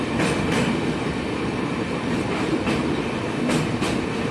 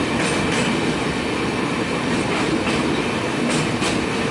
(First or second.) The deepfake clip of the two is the first